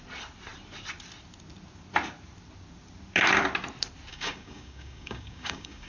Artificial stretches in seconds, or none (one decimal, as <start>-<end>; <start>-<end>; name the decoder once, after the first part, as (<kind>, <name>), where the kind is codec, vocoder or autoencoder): 4.1-5.9 (codec, DAC)